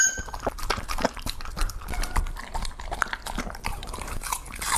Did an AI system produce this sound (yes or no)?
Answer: yes